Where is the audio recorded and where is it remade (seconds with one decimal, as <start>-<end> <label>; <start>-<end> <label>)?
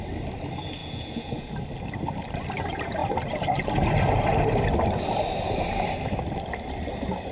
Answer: 0.0-0.8 recorded; 0.8-1.5 remade; 1.5-7.3 recorded